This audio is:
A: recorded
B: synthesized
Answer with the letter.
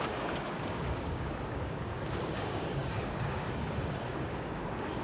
B